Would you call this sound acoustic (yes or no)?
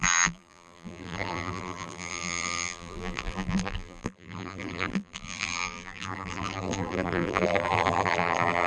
no